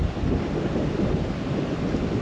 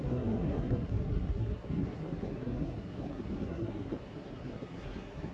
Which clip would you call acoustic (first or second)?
first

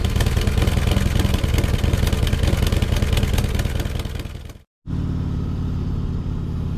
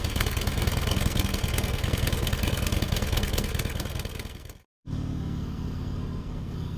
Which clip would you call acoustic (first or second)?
first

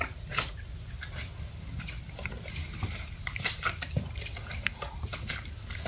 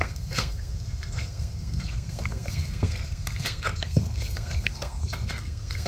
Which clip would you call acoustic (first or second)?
first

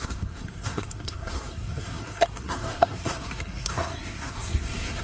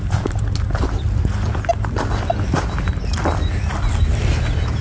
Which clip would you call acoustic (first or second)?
second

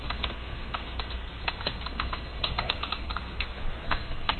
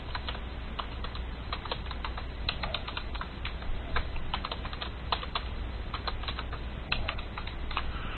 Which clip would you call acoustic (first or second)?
second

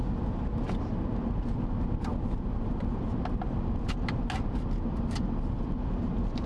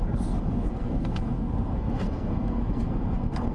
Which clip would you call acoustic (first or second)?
first